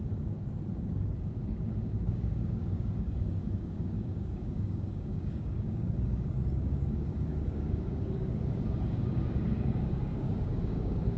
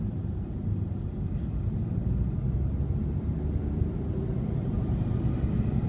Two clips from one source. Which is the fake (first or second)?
first